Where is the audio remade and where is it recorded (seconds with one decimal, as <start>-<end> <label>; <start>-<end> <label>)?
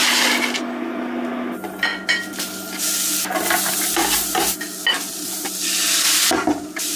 0.0-7.0 recorded